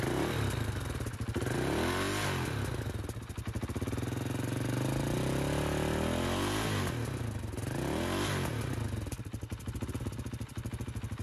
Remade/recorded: recorded